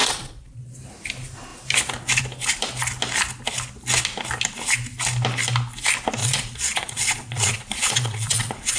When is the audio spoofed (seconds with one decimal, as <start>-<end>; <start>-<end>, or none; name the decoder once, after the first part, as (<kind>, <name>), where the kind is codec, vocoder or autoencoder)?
0.0-0.7 (vocoder, Vocos); 6.2-8.8